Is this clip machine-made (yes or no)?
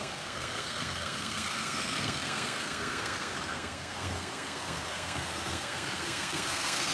yes